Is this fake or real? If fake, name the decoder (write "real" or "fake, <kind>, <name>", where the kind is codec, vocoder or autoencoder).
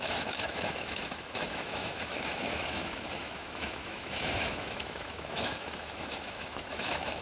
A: fake, autoencoder, DAC-VAE